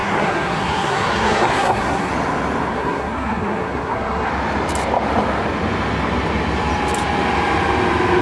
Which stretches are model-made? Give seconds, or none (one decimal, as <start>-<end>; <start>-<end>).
0.0-2.1; 2.7-4.3